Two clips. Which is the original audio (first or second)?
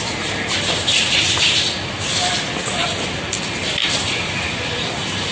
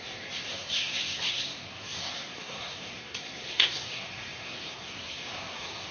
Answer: first